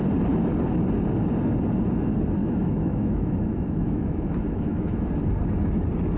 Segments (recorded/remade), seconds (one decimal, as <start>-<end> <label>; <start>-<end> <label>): 0.0-2.4 recorded; 2.4-5.1 remade; 5.1-6.2 recorded

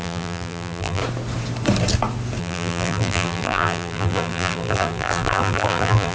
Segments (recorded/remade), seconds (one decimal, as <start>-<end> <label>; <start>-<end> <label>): 0.0-1.0 remade; 1.0-2.4 recorded; 2.4-6.1 remade

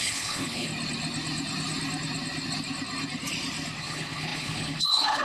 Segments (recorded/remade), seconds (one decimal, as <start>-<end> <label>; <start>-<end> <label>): 0.0-0.7 remade; 0.7-3.8 recorded; 3.8-5.2 remade

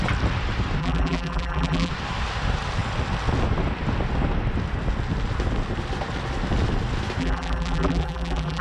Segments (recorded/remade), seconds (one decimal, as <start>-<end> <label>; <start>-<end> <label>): 0.0-0.8 recorded; 0.8-1.9 remade; 1.9-7.2 recorded; 7.2-8.6 remade

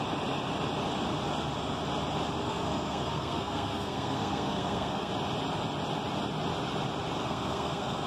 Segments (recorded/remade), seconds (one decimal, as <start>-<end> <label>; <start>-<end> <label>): 0.0-2.4 recorded; 2.4-5.1 remade; 5.1-7.2 recorded; 7.2-8.1 remade